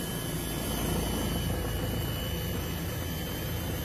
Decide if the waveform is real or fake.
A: real